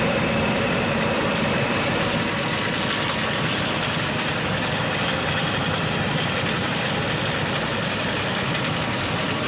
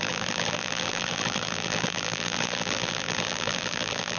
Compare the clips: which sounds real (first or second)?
first